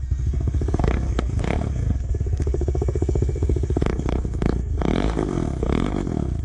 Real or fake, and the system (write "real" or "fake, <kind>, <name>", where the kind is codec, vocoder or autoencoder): fake, codec, SNAC